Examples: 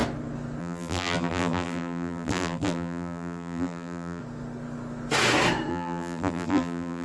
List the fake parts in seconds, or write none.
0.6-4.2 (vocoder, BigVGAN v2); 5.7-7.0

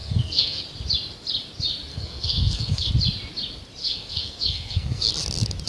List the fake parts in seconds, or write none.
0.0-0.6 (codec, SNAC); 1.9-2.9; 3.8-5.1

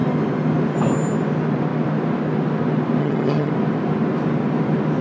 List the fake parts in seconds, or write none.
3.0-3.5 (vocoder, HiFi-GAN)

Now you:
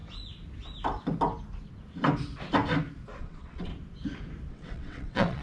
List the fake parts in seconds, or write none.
3.2-3.7 (vocoder, WaveNeXt); 4.5-5.4

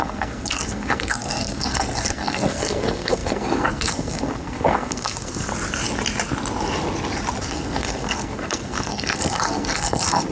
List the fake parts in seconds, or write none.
0.0-5.5 (codec, SNAC); 7.4-10.3

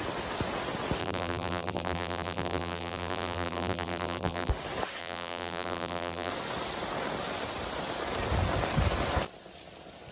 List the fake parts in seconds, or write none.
1.0-4.5 (vocoder, BigVGAN v2); 5.0-6.3

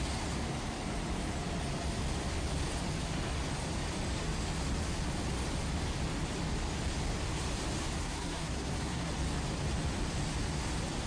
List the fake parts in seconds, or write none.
8.0-9.1 (codec, SNAC)

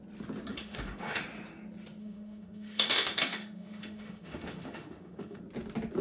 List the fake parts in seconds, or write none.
0.5-1.2 (autoencoder, DAC-VAE); 2.0-5.4